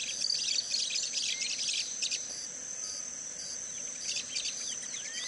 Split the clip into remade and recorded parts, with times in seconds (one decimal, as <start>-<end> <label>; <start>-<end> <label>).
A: 0.0-5.3 recorded